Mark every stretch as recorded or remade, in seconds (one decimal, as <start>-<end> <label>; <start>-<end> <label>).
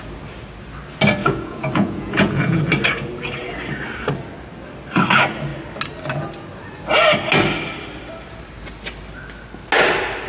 0.0-1.2 recorded; 1.2-2.6 remade; 2.6-10.3 recorded